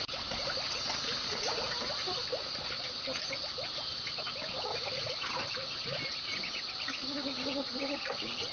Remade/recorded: recorded